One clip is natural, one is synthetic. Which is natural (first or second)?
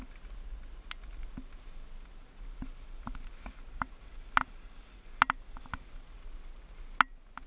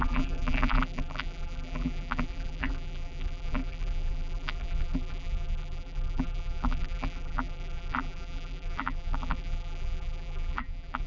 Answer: first